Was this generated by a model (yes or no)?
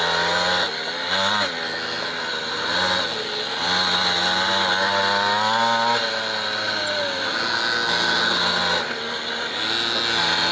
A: no